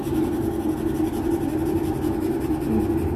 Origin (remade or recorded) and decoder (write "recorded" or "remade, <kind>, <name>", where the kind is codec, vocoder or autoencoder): recorded